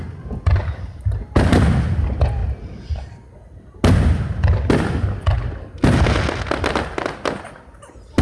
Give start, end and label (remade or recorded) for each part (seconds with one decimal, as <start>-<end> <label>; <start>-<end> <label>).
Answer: 0.0-8.2 recorded